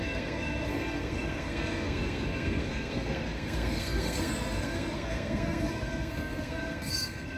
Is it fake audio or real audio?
fake